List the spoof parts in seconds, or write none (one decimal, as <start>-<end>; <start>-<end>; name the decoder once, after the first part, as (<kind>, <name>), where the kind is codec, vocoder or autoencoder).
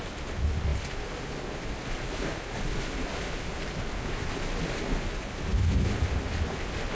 none